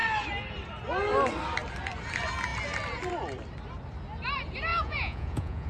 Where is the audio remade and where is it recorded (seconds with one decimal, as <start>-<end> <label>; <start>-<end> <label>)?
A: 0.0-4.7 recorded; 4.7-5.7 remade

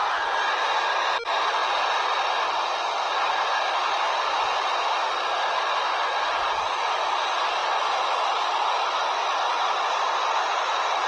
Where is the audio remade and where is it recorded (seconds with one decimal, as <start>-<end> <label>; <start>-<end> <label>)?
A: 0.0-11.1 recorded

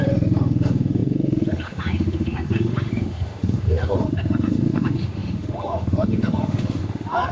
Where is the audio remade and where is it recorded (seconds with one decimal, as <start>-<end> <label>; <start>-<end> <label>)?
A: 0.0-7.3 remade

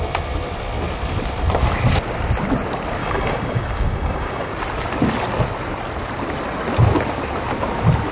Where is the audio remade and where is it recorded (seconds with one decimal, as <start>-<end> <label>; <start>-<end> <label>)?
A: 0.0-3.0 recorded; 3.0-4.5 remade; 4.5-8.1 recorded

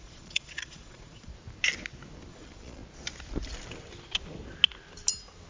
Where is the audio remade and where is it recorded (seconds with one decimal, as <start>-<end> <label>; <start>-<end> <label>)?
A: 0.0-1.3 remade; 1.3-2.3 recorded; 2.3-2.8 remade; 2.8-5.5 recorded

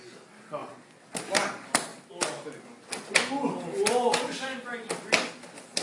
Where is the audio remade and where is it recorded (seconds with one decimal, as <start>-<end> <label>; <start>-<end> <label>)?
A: 0.0-5.8 recorded

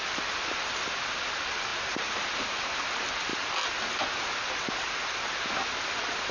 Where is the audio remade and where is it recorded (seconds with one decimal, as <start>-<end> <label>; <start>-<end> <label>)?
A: 0.0-6.3 recorded

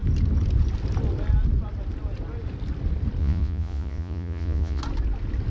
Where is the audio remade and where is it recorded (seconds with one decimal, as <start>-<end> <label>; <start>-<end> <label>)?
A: 0.0-3.2 recorded; 3.2-4.8 remade; 4.8-5.5 recorded